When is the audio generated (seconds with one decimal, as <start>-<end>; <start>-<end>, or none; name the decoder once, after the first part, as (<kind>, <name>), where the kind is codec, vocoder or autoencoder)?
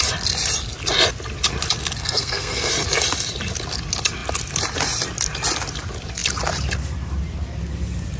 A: 2.0-2.7 (codec, SNAC)